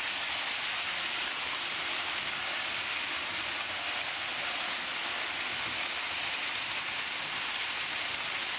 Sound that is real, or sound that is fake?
real